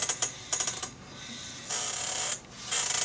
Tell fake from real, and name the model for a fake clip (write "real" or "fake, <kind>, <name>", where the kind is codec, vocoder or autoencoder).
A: real